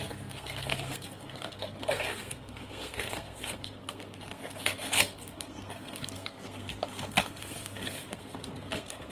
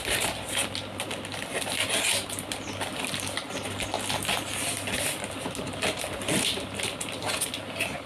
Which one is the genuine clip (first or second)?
second